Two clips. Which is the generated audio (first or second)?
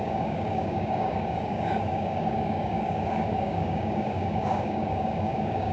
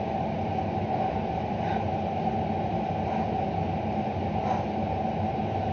first